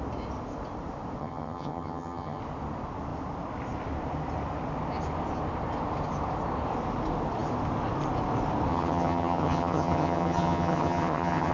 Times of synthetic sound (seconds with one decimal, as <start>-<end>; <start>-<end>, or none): 1.2-2.4; 8.7-11.5